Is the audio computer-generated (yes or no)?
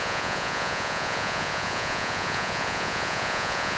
yes